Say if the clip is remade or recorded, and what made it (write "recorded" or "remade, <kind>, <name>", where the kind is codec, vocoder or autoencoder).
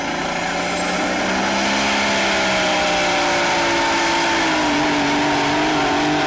recorded